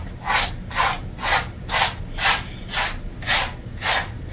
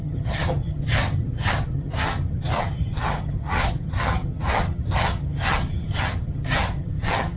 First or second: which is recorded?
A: first